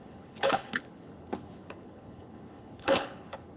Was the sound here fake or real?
fake